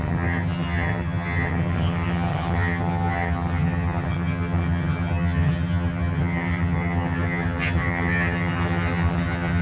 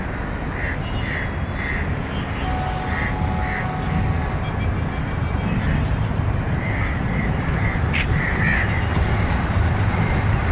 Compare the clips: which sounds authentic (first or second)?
second